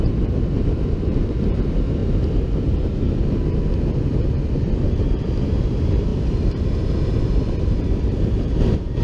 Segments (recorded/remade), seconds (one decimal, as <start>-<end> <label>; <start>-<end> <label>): 0.0-2.0 remade; 2.0-4.8 recorded; 4.8-9.0 remade